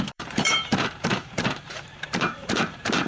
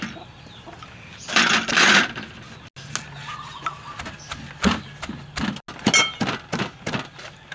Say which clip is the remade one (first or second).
first